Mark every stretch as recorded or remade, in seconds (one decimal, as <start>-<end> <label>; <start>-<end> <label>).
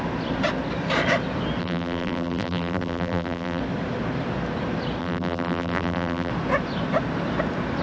0.0-1.6 recorded; 1.6-3.6 remade; 3.6-5.0 recorded; 5.0-6.3 remade; 6.3-7.8 recorded